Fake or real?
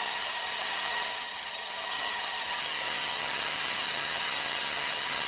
fake